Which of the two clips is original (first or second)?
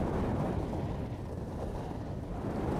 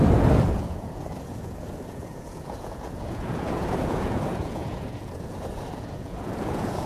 first